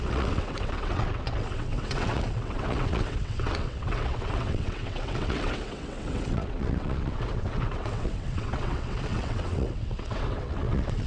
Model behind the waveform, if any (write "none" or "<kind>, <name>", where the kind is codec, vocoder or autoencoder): vocoder, WaveNeXt